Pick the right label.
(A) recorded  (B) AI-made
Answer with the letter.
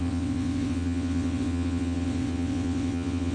B